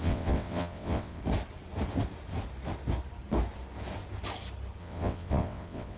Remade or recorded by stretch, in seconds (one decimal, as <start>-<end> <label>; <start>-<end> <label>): 0.0-1.2 remade; 1.2-4.8 recorded; 4.8-6.0 remade